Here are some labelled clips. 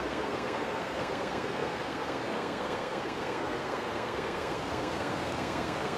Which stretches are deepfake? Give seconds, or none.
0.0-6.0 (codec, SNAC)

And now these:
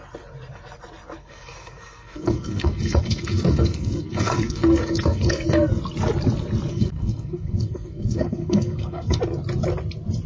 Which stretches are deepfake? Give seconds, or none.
1.2-5.7 (codec, SNAC); 6.7-9.2

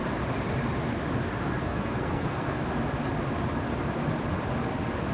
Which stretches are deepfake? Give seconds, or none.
1.6-2.6 (codec, SNAC)

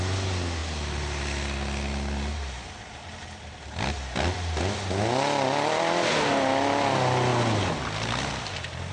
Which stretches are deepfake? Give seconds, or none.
none

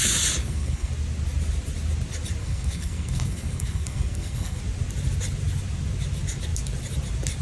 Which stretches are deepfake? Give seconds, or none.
0.4-0.9 (codec, SNAC); 2.4-4.6